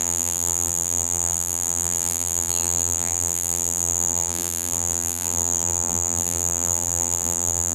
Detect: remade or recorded remade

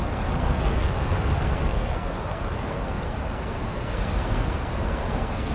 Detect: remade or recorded remade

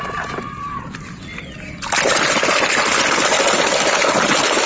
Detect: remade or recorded recorded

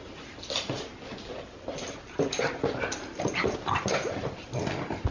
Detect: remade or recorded recorded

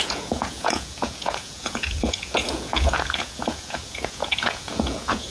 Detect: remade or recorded remade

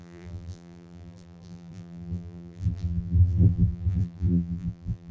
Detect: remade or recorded remade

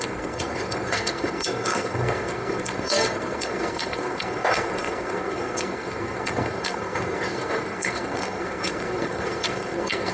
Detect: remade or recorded remade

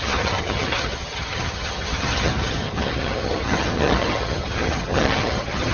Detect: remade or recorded remade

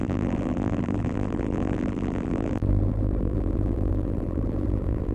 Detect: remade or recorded remade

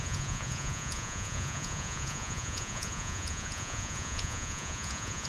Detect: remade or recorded remade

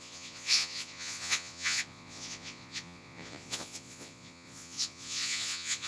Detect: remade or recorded remade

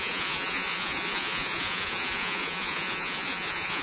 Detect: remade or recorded remade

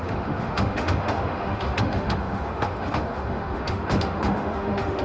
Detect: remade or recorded remade